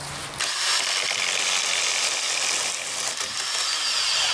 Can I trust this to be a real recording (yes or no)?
yes